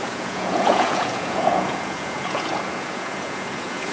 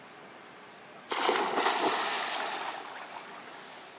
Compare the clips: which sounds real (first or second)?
second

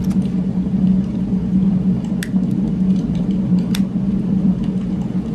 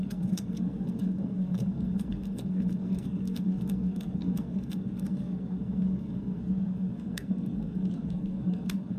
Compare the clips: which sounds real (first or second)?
first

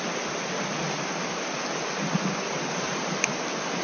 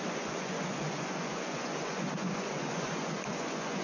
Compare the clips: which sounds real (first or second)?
first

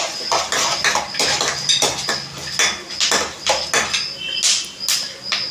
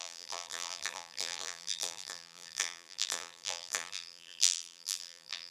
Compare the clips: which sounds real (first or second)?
first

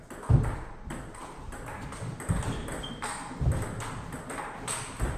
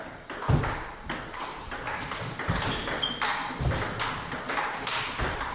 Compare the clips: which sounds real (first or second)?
first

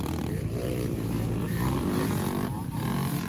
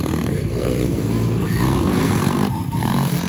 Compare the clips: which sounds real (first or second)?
first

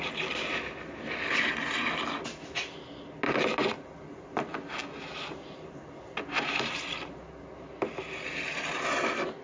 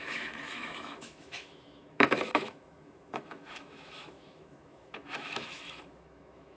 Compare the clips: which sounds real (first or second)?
first